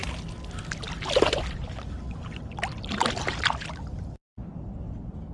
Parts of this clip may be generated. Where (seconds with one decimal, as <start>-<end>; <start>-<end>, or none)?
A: none